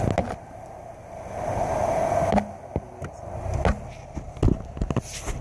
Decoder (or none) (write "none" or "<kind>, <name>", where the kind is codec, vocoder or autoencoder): none